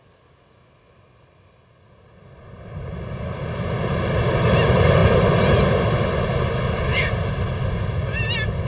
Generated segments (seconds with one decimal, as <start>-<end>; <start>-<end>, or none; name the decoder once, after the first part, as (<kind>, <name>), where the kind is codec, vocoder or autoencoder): none